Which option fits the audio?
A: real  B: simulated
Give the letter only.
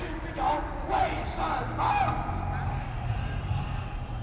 A